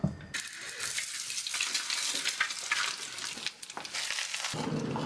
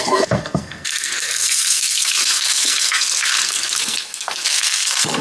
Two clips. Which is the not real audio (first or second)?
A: second